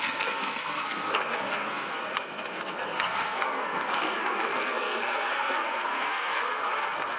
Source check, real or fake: fake